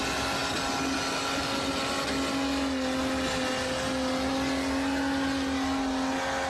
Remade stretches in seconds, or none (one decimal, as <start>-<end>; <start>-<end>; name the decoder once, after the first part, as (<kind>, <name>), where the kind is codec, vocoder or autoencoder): none